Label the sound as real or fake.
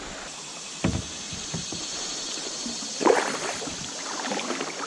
real